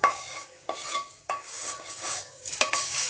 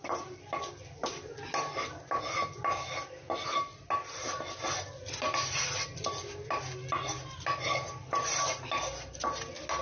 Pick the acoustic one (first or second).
second